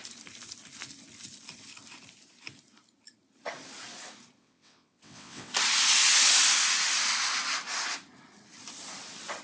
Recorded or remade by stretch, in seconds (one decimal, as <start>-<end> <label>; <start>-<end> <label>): 0.0-4.4 recorded; 4.4-5.5 remade; 5.5-9.4 recorded